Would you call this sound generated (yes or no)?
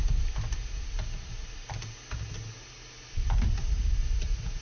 no